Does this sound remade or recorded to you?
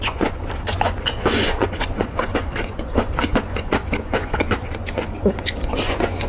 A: remade